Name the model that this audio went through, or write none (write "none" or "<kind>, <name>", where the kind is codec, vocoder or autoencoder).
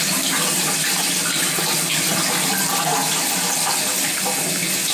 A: none